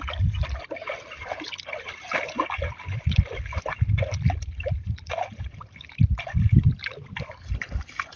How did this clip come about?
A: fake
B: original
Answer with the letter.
B